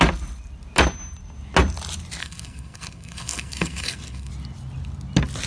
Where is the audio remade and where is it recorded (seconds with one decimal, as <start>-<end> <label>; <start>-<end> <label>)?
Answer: 0.0-2.2 recorded; 2.2-4.3 remade; 4.3-5.5 recorded